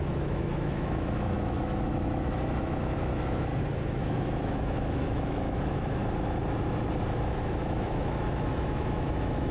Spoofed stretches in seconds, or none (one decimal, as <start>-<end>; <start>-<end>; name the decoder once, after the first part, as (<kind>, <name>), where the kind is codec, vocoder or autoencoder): 0.0-3.5 (autoencoder, DAC-VAE); 4.0-6.0; 7.4-9.5